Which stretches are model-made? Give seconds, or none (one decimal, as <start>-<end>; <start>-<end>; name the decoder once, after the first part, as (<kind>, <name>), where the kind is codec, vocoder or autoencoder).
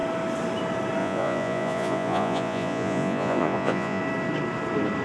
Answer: 1.0-4.0 (vocoder, Vocos)